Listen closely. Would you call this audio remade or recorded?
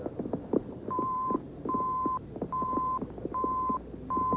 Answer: recorded